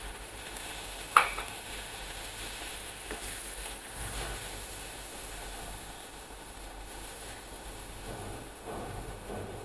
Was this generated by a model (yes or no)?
yes